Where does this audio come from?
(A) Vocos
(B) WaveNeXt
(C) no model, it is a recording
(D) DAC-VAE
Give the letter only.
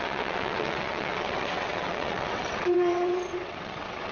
B